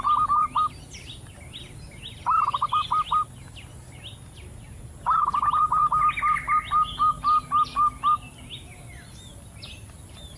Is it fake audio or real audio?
real